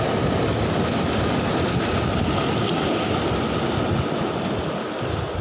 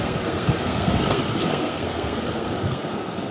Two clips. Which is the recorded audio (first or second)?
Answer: first